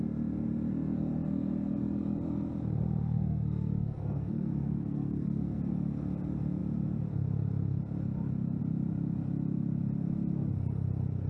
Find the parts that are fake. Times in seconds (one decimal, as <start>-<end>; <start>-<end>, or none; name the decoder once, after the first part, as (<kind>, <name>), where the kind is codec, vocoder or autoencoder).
3.0-5.6 (codec, SNAC)